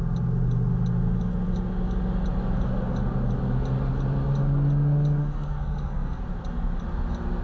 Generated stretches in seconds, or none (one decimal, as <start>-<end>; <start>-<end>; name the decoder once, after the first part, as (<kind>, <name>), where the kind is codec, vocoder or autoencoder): 5.2-6.2 (codec, SNAC)